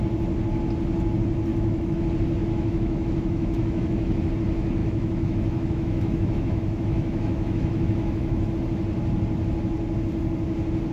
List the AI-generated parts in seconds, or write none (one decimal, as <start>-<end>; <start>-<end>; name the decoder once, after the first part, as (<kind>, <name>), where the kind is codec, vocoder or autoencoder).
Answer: 1.5-2.0 (autoencoder, DAC-VAE); 2.4-4.3; 4.8-8.5